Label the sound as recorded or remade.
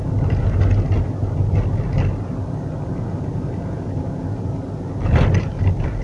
recorded